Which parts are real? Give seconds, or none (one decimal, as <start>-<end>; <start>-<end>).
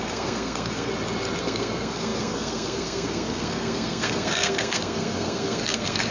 0.9-1.4